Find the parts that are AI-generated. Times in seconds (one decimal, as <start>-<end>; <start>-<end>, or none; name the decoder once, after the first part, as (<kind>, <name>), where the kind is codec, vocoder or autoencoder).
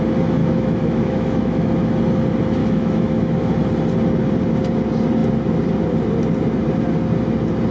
0.4-1.9 (autoencoder, DAC-VAE); 2.6-3.5